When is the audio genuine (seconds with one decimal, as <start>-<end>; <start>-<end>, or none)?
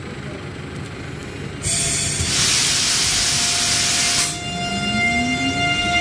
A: 0.0-6.0